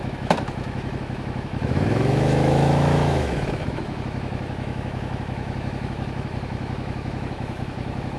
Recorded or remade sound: remade